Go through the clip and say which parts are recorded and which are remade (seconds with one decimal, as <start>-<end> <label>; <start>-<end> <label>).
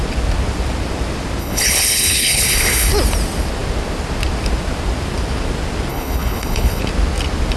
0.0-1.4 recorded; 1.4-2.9 remade; 2.9-5.9 recorded; 5.9-6.8 remade; 6.8-7.6 recorded